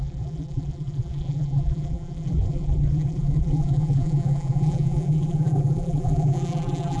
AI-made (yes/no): yes